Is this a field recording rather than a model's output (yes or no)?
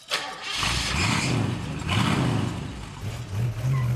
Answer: yes